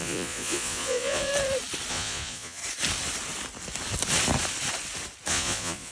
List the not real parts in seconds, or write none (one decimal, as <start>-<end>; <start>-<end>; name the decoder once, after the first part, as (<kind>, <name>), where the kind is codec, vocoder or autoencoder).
0.0-1.3 (vocoder, Vocos); 1.9-2.6; 5.3-5.9

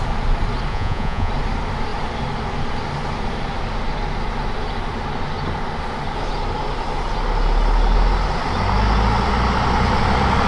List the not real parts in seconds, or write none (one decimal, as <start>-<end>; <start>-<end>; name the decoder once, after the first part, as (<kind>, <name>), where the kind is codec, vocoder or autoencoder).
0.7-1.3 (vocoder, Vocos)

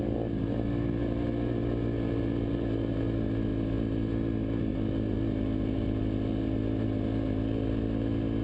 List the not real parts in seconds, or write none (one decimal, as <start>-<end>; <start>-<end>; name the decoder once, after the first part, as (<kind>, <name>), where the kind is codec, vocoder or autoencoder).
none

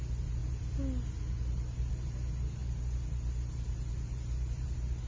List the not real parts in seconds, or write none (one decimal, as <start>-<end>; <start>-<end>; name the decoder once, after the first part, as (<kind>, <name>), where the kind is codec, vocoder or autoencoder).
none

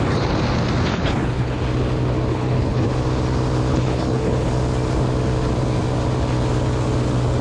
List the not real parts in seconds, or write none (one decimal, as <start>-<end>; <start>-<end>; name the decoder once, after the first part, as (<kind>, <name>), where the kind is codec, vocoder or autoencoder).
0.9-1.6 (codec, HILCodec); 2.3-2.9; 3.7-4.5

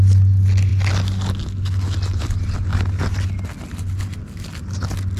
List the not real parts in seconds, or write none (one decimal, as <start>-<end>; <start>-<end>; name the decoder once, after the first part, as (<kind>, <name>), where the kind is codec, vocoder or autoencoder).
none

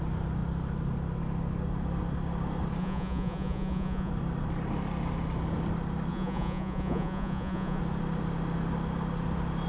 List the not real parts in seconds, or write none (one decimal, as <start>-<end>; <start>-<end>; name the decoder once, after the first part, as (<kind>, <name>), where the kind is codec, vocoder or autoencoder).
2.8-4.1 (vocoder, Vocos); 6.1-7.8